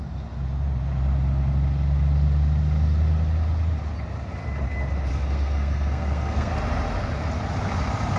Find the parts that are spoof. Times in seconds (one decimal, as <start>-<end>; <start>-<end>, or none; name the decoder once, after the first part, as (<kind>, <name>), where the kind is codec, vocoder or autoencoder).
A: 5.1-6.5 (codec, SNAC)